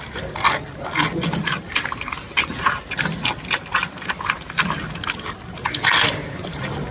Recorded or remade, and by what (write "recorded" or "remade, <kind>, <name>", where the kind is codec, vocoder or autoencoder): recorded